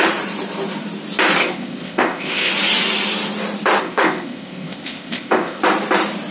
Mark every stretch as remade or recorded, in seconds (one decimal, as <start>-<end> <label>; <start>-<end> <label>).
0.0-1.4 recorded; 1.4-2.5 remade; 2.5-3.8 recorded; 3.8-5.6 remade; 5.6-6.3 recorded